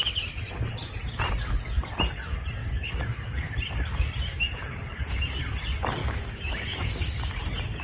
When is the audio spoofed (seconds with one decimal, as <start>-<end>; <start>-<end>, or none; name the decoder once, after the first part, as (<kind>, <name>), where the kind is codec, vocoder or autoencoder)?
2.6-3.5 (codec, DAC); 4.3-5.4; 6.0-7.3